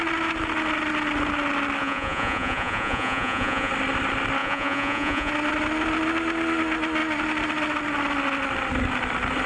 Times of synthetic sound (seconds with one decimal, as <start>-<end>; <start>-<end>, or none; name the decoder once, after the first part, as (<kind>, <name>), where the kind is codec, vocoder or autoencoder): 1.8-3.7 (vocoder, Vocos); 4.4-5.3